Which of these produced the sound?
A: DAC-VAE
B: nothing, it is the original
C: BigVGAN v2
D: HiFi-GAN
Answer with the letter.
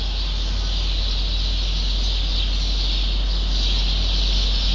B